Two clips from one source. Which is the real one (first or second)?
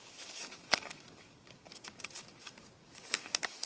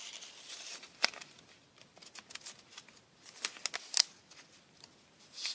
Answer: second